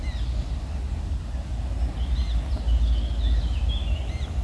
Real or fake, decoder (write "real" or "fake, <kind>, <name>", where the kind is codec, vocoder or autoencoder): real